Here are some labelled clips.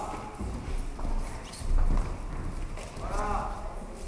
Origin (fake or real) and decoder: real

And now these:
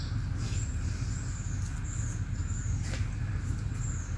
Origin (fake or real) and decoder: real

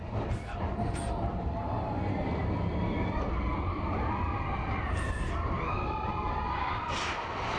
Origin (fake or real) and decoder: real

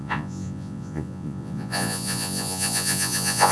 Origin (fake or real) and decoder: fake, vocoder, Vocos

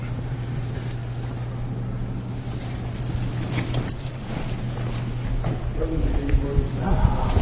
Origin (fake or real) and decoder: real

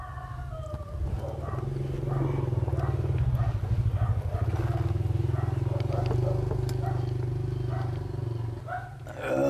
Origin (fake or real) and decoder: real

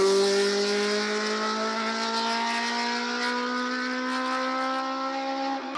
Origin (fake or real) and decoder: real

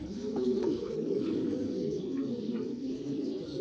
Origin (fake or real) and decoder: fake, codec, SNAC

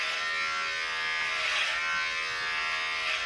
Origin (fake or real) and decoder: real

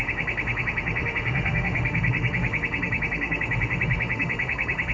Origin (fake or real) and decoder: fake, autoencoder, DAC-VAE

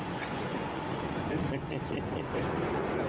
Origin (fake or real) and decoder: fake, vocoder, Vocos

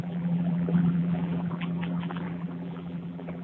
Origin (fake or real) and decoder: fake, vocoder, BigVGAN v2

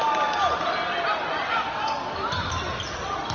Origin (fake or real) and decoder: real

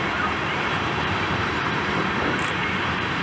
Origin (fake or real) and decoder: fake, vocoder, BigVGAN v2